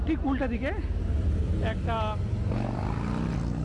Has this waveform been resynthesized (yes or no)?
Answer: no